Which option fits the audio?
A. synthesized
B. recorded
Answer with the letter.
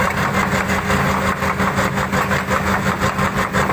B